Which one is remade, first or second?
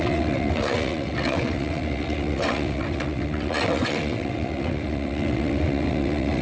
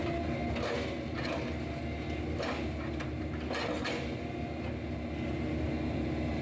first